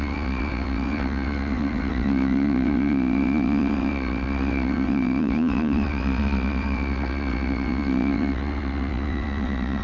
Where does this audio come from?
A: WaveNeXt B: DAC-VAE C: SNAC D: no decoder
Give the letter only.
A